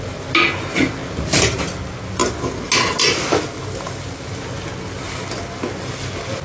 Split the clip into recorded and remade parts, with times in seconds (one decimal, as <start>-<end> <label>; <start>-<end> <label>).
0.0-6.4 recorded